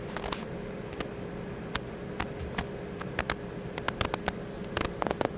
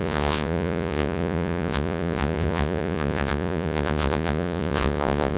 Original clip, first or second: first